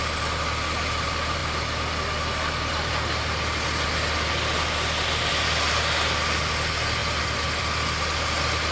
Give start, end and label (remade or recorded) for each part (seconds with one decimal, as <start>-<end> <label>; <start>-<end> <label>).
0.0-8.7 recorded